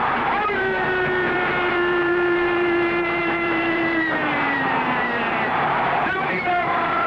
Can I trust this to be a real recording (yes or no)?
no